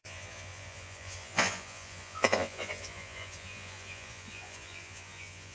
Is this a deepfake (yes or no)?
yes